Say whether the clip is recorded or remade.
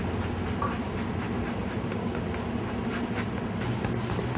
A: recorded